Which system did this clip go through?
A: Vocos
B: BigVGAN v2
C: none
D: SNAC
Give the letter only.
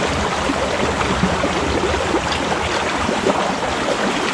C